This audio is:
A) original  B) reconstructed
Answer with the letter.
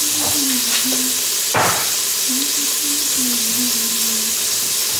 A